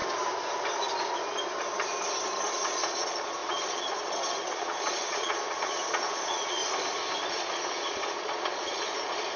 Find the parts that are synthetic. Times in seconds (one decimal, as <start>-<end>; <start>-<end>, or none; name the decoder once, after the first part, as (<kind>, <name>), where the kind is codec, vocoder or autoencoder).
2.5-6.6 (vocoder, Vocos); 7.3-9.4